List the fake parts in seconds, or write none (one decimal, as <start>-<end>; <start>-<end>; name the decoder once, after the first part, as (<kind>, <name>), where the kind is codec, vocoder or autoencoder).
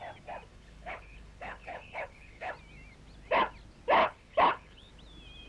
0.5-2.5 (codec, HILCodec); 4.0-4.9